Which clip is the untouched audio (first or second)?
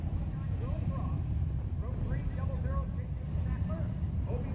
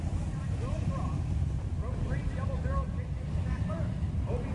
first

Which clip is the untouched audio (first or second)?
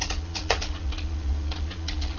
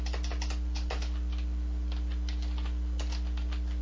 second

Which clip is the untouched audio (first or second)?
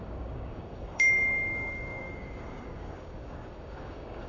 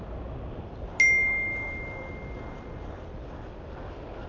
second